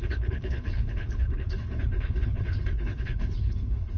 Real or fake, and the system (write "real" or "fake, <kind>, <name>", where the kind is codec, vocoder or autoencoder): fake, codec, HILCodec